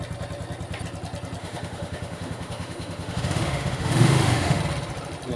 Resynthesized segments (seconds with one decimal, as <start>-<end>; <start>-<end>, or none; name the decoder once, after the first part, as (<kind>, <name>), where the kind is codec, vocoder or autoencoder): 1.4-4.6 (autoencoder, DAC-VAE)